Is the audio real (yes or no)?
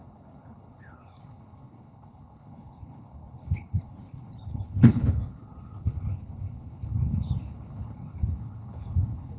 no